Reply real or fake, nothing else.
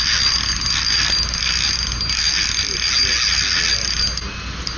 real